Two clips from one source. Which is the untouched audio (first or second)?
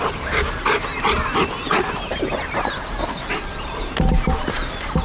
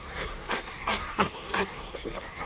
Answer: first